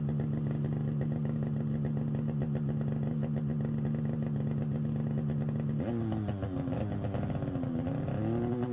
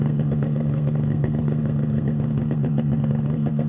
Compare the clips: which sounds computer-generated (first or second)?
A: second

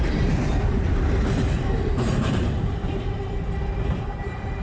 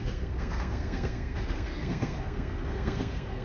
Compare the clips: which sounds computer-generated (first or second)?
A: second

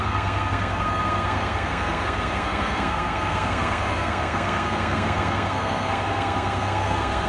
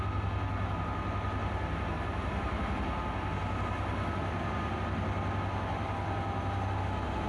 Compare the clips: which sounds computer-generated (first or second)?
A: first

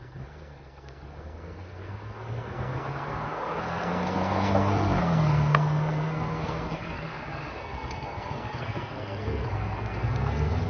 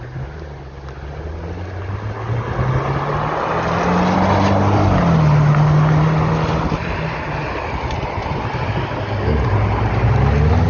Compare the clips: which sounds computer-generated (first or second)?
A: first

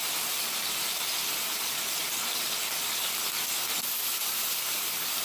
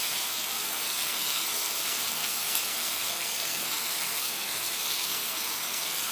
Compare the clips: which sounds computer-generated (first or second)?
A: second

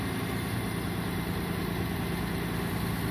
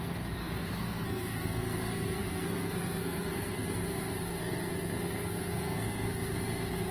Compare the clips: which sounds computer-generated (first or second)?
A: second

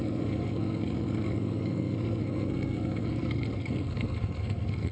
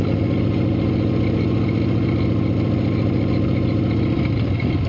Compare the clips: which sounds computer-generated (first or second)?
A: first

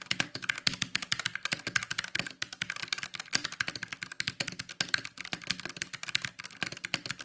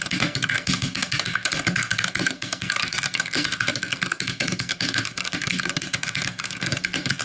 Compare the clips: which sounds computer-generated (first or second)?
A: second